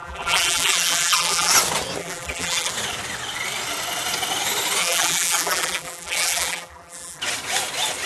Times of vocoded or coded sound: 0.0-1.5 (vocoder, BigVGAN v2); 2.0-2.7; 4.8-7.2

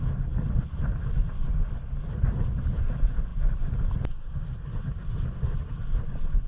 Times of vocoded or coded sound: none